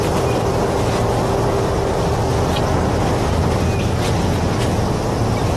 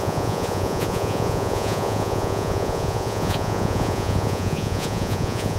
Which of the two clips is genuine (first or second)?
first